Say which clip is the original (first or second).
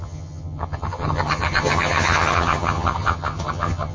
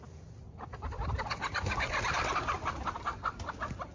second